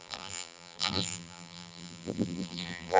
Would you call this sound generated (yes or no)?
yes